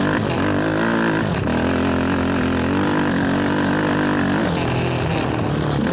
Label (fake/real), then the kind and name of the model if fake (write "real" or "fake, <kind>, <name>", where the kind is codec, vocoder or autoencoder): real